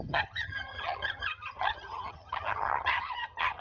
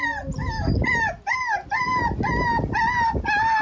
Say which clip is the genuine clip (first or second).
second